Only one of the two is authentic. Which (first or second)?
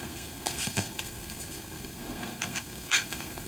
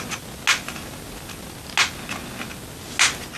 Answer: second